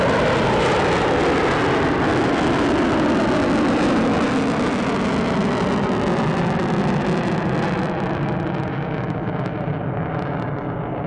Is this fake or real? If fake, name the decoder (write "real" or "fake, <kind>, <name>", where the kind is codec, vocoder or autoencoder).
real